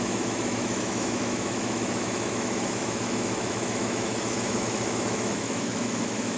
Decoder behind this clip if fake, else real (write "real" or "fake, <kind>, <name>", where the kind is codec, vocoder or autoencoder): fake, autoencoder, DAC-VAE